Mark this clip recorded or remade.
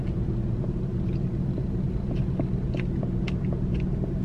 recorded